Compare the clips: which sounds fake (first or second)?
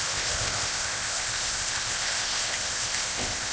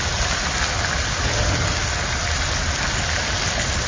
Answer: first